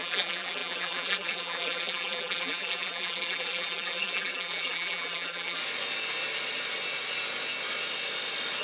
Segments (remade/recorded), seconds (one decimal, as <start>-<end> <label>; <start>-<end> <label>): 0.0-5.6 remade; 5.6-8.6 recorded